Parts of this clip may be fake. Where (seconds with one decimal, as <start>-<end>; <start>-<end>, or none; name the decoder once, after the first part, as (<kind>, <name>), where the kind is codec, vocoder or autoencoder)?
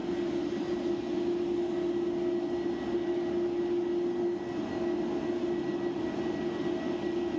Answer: none